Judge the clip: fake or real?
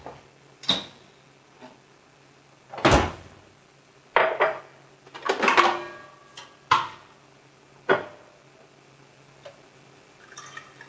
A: real